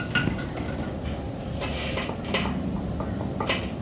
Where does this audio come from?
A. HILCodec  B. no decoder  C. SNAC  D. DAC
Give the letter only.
B